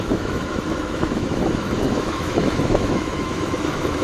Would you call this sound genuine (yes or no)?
no